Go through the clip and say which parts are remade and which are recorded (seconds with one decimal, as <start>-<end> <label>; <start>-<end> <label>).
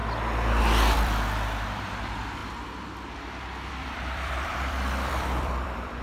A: 0.0-0.6 recorded; 0.6-2.4 remade; 2.4-3.7 recorded; 3.7-6.0 remade